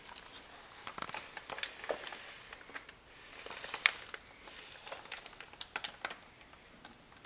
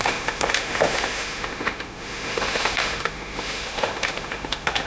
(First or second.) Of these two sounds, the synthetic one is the second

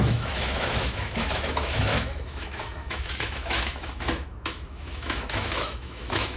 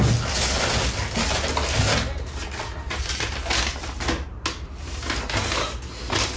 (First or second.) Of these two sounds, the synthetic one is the first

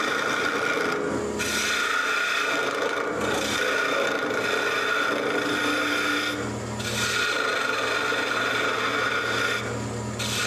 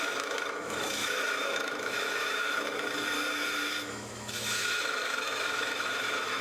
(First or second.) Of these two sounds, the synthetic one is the second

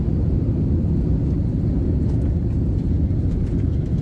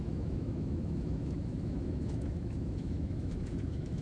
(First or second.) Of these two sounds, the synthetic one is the second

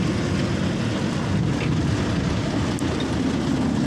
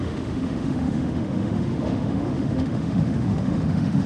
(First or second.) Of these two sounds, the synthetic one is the second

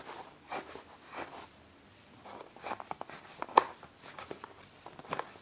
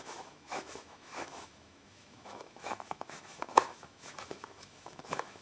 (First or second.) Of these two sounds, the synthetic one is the second